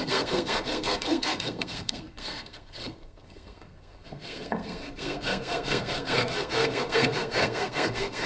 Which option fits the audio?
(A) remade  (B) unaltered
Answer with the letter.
A